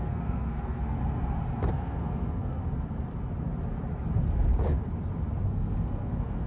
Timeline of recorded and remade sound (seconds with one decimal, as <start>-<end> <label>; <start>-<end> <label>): 0.0-1.0 remade; 1.0-1.7 recorded; 1.7-2.6 remade; 2.6-5.4 recorded; 5.4-6.5 remade